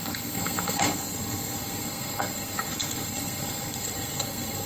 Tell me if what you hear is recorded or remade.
remade